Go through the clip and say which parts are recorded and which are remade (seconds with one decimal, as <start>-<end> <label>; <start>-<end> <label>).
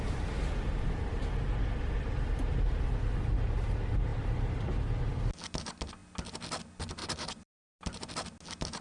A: 0.0-4.1 recorded; 4.1-4.6 remade; 4.6-7.0 recorded; 7.0-8.1 remade; 8.1-8.8 recorded